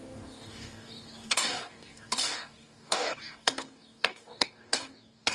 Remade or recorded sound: remade